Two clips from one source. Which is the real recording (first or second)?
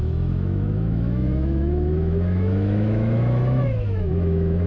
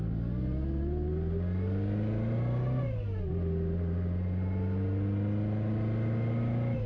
second